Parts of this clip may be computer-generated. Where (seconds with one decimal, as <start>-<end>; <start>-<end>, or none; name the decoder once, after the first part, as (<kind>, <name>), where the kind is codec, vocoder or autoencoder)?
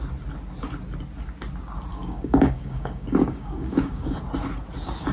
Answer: 1.9-4.2 (codec, DAC)